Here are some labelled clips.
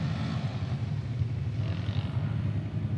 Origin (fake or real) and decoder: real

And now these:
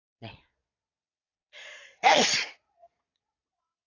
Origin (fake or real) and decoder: fake, vocoder, Vocos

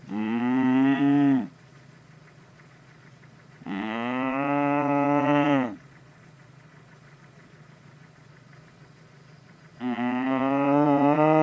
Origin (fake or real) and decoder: fake, vocoder, Vocos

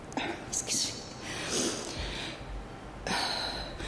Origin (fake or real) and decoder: real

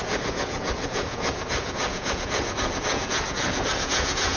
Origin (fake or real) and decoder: fake, vocoder, Vocos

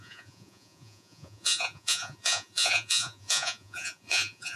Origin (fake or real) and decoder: fake, vocoder, Vocos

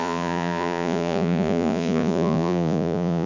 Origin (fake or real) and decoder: fake, vocoder, Vocos